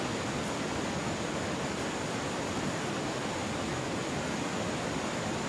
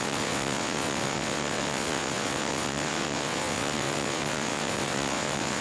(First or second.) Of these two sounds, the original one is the first